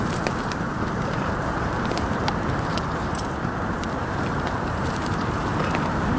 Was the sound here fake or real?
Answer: fake